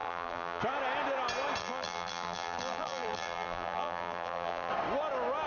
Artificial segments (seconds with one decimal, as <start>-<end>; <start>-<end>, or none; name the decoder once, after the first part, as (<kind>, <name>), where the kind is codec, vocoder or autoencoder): 0.0-0.6 (vocoder, BigVGAN v2); 1.6-4.7